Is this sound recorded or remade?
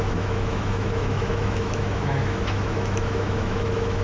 remade